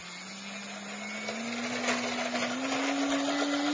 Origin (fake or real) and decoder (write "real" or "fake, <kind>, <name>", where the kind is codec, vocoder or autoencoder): real